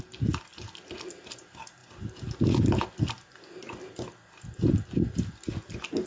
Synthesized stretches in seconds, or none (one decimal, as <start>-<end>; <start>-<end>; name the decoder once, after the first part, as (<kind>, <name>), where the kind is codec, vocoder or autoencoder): none